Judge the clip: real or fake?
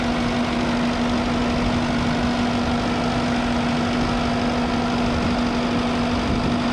real